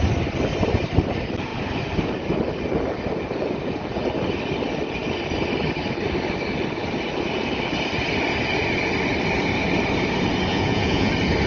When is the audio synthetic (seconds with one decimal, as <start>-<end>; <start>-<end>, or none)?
10.5-11.1